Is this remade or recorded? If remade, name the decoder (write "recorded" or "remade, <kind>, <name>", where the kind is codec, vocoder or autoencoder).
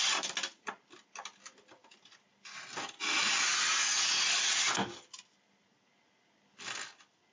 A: recorded